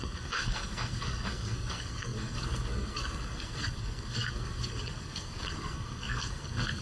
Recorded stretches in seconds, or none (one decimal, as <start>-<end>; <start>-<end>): none